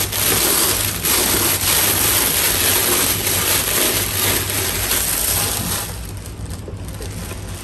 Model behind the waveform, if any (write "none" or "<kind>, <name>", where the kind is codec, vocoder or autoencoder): none